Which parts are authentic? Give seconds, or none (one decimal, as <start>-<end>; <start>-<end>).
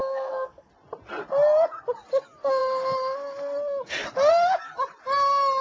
0.7-5.6